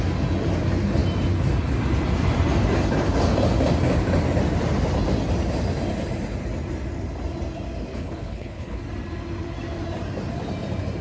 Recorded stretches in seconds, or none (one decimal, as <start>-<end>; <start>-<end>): 0.0-7.9; 8.8-11.0